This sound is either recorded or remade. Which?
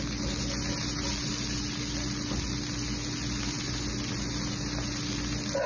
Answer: recorded